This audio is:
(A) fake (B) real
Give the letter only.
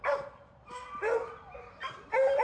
B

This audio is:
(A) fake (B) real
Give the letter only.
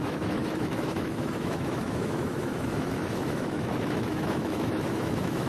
A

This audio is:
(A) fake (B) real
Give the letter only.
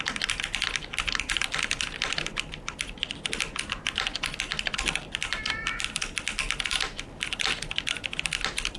B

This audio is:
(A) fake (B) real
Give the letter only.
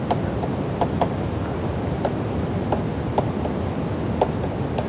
B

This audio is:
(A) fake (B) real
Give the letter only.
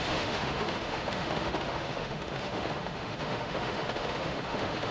A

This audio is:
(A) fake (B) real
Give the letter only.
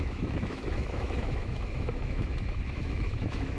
A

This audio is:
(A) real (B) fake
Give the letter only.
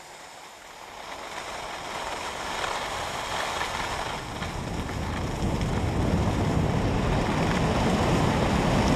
A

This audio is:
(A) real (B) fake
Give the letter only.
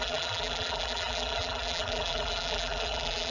B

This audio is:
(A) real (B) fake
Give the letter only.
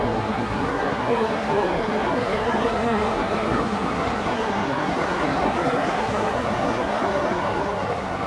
B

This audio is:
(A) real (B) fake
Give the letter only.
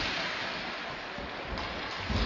A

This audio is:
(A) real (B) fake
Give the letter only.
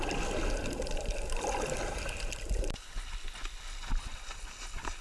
A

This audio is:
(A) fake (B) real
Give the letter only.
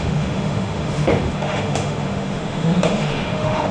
A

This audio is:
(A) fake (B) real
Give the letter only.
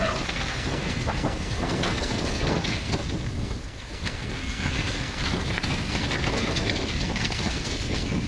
A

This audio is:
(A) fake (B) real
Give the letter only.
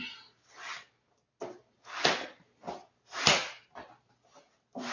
B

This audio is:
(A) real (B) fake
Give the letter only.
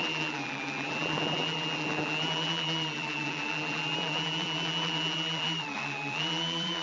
B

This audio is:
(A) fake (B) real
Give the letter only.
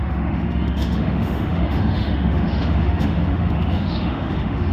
A